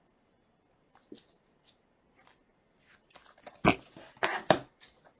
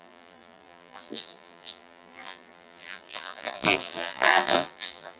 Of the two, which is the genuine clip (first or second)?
first